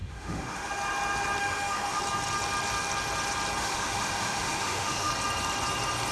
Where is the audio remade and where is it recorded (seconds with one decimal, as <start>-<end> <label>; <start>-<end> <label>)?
0.0-0.7 remade; 0.7-1.4 recorded; 1.4-2.0 remade; 2.0-3.6 recorded; 3.6-5.1 remade; 5.1-6.1 recorded